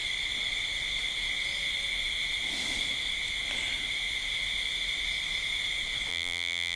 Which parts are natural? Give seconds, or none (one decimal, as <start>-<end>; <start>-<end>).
0.0-6.1